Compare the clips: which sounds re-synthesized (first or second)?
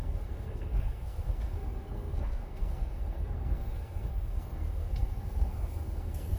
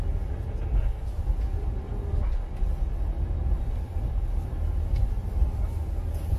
first